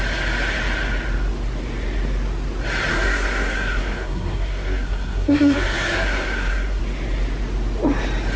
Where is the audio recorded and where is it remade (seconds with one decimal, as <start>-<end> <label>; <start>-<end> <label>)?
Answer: 0.0-2.9 recorded; 2.9-6.8 remade; 6.8-8.4 recorded